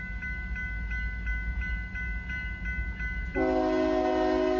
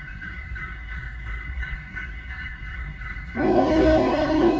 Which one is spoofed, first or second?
second